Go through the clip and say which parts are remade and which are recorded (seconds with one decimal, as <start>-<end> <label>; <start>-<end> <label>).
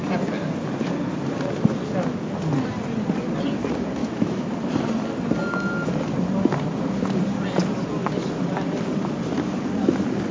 0.0-4.0 recorded; 4.0-4.5 remade; 4.5-10.3 recorded